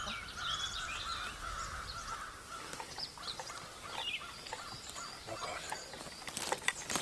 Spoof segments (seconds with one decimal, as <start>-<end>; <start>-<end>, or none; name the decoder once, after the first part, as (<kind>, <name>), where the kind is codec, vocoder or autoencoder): none